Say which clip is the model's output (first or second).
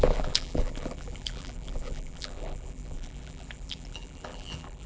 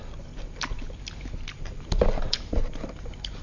first